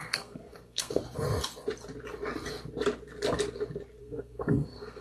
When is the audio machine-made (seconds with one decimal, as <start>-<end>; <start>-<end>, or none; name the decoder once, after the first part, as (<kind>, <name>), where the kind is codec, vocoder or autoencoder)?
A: 0.0-1.0 (codec, SNAC); 4.0-5.0